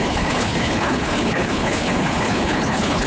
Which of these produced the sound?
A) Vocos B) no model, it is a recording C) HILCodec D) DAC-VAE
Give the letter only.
C